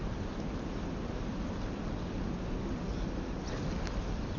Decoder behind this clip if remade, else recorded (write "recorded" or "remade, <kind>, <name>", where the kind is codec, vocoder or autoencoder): recorded